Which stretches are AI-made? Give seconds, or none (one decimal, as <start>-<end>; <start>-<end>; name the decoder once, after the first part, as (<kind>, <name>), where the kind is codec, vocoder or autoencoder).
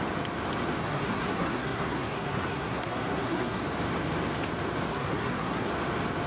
0.8-3.6 (codec, SNAC); 4.9-5.7